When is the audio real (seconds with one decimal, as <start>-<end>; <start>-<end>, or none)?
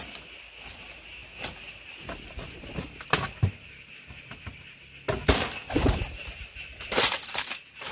0.0-7.9